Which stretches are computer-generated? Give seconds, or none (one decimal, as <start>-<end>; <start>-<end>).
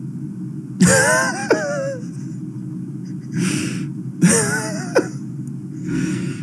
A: 5.8-6.4